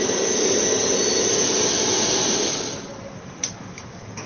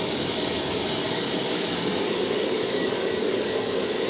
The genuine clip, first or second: first